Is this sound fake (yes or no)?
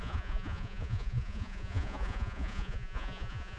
yes